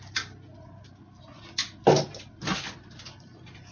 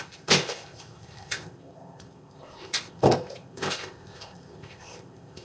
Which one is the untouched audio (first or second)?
first